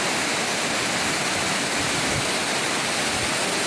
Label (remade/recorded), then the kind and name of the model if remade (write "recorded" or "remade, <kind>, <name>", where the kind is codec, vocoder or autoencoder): recorded